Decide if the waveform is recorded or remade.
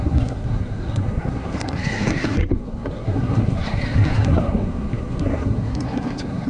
remade